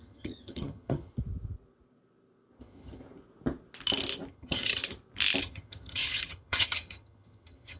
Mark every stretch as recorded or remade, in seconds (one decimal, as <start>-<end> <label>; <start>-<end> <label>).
0.0-1.1 remade; 1.1-2.6 recorded; 2.6-3.0 remade; 3.0-4.3 recorded; 4.3-4.8 remade; 4.8-5.4 recorded; 5.4-7.8 remade